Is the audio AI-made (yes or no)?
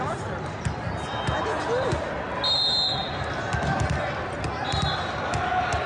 no